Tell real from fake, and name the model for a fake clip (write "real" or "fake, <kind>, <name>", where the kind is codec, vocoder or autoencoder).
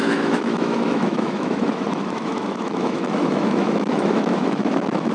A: fake, autoencoder, DAC-VAE